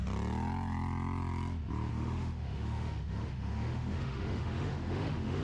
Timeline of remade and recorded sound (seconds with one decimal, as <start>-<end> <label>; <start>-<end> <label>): 0.0-1.9 recorded; 1.9-5.4 remade